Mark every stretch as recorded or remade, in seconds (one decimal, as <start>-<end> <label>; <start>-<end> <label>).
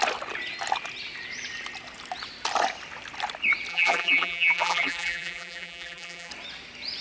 0.0-3.7 recorded; 3.7-6.3 remade; 6.3-7.0 recorded